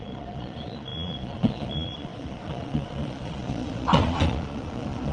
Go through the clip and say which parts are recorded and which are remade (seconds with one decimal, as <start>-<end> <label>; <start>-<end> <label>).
0.0-5.1 remade